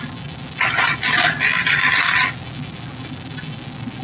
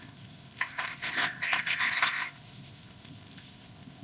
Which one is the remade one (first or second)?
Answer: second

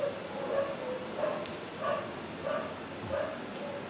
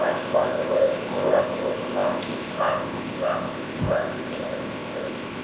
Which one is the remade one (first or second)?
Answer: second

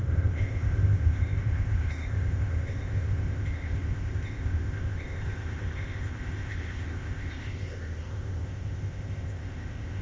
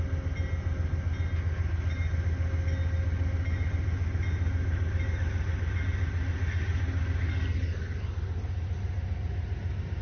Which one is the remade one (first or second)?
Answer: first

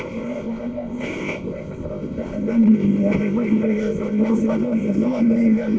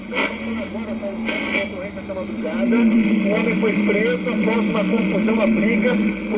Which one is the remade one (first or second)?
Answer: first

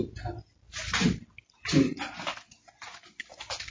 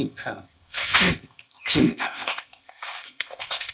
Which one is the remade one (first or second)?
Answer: second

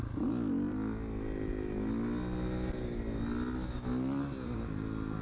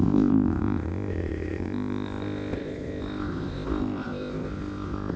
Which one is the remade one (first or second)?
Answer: second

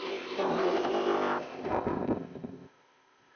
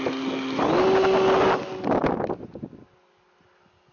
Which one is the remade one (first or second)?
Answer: first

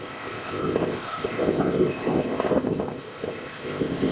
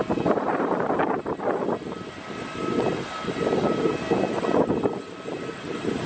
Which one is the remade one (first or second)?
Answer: first